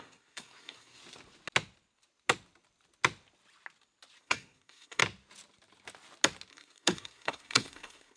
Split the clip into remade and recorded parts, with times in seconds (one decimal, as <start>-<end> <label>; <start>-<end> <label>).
0.0-1.0 remade; 1.0-4.2 recorded; 4.2-5.0 remade; 5.0-6.5 recorded; 6.5-8.2 remade